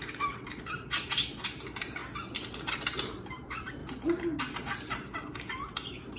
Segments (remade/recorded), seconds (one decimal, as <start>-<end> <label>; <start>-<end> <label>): 0.0-2.0 remade; 2.0-2.8 recorded; 2.8-6.2 remade